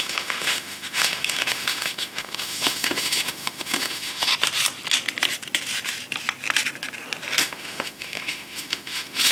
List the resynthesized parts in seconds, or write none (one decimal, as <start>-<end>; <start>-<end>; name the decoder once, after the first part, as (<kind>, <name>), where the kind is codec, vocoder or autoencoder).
0.0-4.3 (autoencoder, DAC-VAE); 7.4-9.3